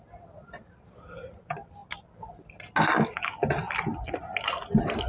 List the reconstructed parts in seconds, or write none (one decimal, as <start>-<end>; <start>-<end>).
none